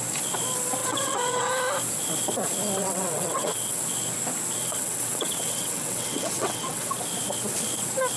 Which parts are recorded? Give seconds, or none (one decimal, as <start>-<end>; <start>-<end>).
0.0-0.8; 1.5-2.8; 3.8-4.6; 6.9-8.2